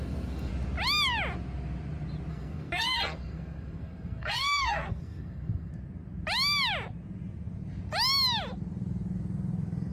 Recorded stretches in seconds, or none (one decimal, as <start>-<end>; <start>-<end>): 0.5-2.3; 5.7-9.9